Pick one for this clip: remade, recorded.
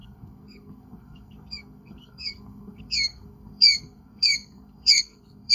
remade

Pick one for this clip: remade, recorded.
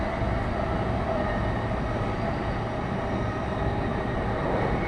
recorded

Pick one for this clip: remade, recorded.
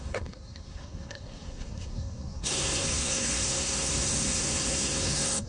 remade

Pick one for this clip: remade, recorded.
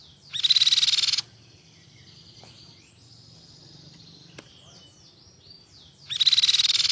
recorded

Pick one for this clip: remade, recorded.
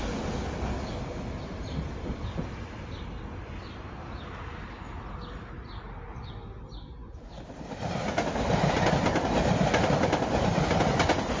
recorded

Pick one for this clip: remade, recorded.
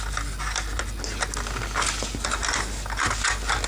recorded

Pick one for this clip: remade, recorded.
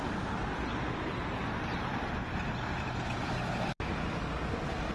recorded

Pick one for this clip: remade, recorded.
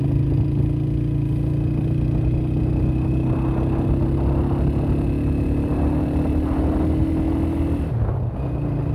recorded